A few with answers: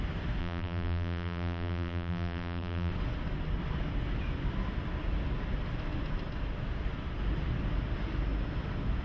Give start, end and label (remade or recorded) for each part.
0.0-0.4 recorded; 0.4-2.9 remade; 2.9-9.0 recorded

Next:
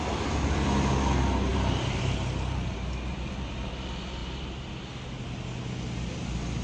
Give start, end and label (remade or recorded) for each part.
0.0-1.5 recorded; 1.5-3.7 remade; 3.7-4.2 recorded; 4.2-4.7 remade; 4.7-6.6 recorded

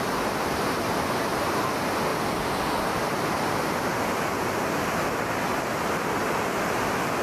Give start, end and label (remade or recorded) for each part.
0.0-2.1 recorded; 2.1-4.3 remade; 4.3-7.2 recorded

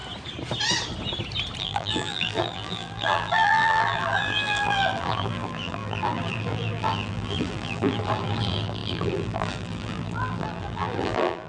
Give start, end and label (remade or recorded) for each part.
0.0-1.6 recorded; 1.6-11.5 remade

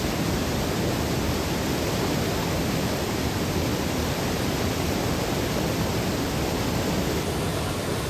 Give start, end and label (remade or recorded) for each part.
0.0-3.7 recorded; 3.7-6.3 remade; 6.3-8.1 recorded